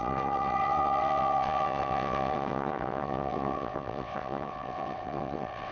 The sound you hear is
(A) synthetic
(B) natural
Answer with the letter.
A